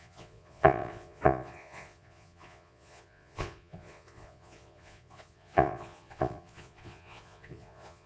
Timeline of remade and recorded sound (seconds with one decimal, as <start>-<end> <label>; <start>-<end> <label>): 0.0-8.1 remade